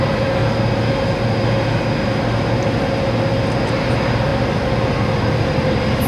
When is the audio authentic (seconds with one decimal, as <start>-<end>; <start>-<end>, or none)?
0.4-3.7; 4.3-6.1